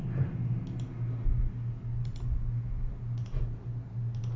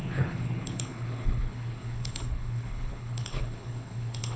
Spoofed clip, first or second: second